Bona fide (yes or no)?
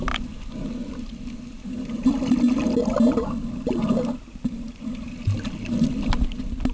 yes